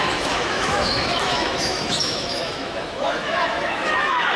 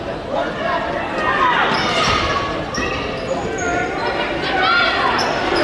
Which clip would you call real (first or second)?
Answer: second